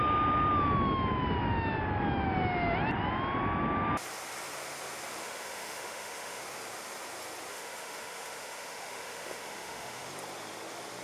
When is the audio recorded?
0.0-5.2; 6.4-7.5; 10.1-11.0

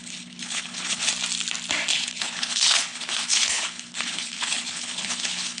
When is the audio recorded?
1.1-1.9

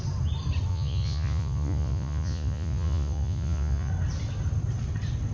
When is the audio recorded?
0.0-0.7; 3.9-5.3

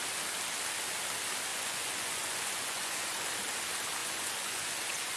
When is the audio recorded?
0.0-1.5; 3.3-4.0